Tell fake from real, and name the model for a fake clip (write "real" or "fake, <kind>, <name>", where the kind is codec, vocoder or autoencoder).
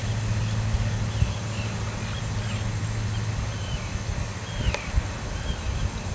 real